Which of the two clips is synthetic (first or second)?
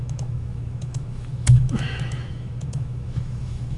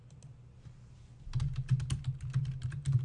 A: first